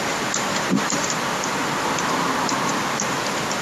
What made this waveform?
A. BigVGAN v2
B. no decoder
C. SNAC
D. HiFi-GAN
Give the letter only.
A